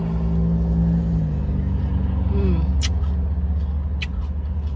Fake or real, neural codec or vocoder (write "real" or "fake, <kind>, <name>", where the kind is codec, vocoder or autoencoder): real